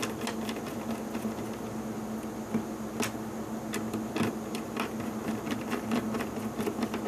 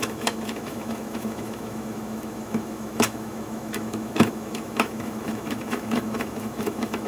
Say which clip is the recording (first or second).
first